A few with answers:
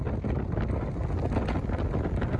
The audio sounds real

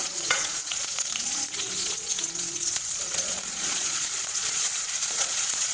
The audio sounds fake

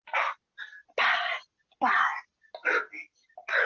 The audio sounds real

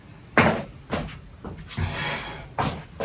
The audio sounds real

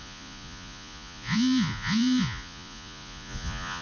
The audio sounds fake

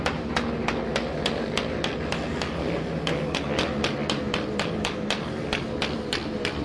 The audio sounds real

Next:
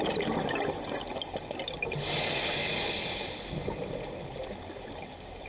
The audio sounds real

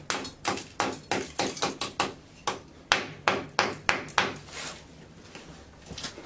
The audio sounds real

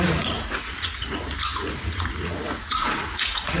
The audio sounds fake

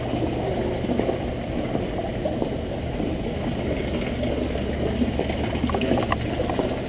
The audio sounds real